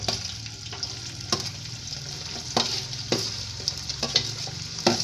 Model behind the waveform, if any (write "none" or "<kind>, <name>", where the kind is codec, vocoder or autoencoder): none